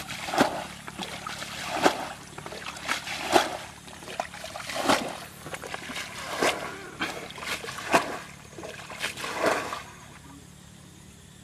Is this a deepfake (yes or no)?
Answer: no